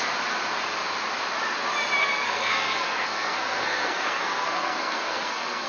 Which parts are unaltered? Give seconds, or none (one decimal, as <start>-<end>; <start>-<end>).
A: 0.0-2.0